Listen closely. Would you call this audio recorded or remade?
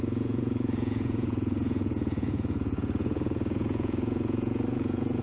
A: remade